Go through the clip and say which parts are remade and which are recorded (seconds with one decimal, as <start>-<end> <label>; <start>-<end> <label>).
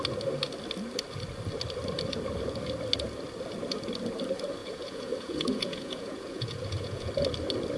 0.0-4.6 recorded; 4.6-7.1 remade; 7.1-7.8 recorded